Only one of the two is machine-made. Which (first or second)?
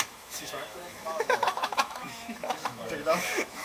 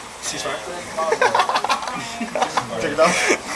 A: first